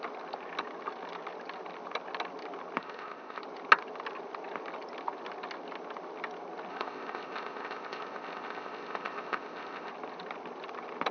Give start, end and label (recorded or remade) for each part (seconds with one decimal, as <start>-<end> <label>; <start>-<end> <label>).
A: 0.0-2.8 recorded; 2.8-3.4 remade; 3.4-6.7 recorded; 6.7-9.9 remade; 9.9-11.1 recorded